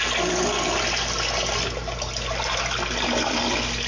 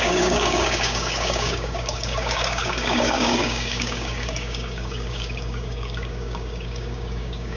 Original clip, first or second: first